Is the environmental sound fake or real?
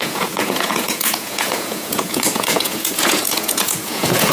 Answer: fake